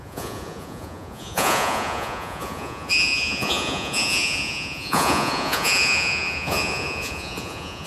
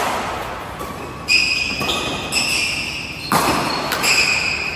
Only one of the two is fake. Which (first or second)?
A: first